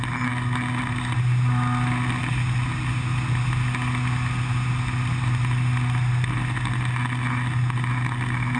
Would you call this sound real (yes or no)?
yes